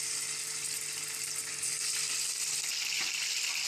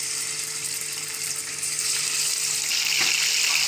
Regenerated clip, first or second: second